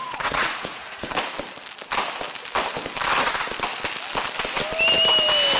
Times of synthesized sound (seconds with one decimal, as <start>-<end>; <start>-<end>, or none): 0.0-1.1